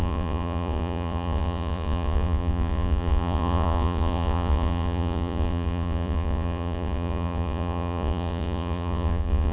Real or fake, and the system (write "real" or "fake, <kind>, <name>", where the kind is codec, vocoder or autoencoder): fake, vocoder, Vocos